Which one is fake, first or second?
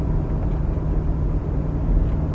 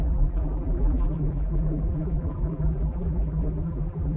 second